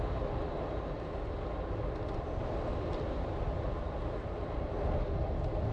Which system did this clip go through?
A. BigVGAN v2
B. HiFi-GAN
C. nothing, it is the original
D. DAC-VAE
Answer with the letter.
C